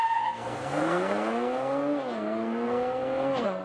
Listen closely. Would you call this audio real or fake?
fake